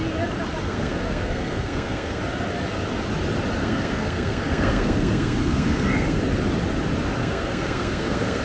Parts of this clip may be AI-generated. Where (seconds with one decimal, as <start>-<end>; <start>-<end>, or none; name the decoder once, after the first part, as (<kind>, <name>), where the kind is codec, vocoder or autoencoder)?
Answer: 0.6-2.2 (codec, SNAC); 3.6-6.2; 7.2-8.4